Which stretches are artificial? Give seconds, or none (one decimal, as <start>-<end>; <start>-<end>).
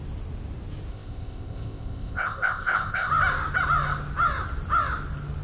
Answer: 0.9-3.1